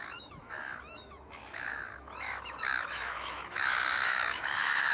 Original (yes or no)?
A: no